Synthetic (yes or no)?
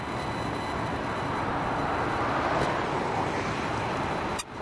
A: no